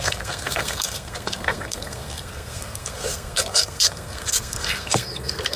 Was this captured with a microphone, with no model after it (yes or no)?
no